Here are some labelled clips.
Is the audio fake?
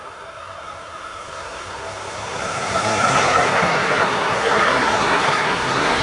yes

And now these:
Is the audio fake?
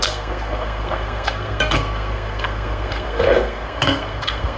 yes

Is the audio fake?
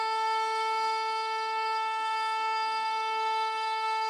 yes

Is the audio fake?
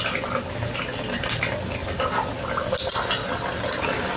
no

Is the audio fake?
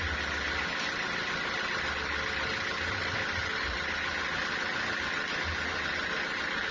no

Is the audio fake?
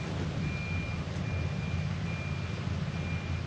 no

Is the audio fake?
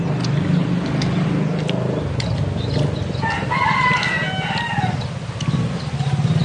no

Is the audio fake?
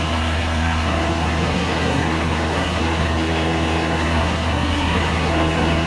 yes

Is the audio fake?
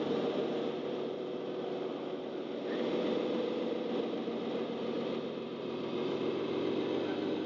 no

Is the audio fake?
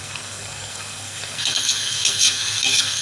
yes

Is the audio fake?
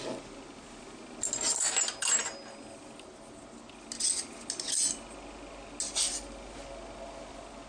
no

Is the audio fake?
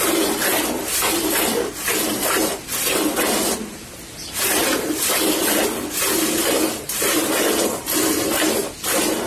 no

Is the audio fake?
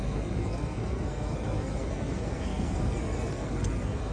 yes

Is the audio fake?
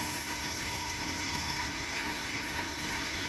yes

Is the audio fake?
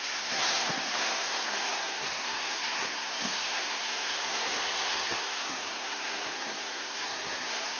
yes